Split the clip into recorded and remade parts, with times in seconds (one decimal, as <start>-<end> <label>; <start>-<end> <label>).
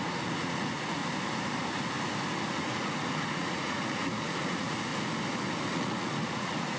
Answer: 0.0-1.0 remade; 1.0-2.6 recorded; 2.6-4.9 remade; 4.9-5.7 recorded; 5.7-6.8 remade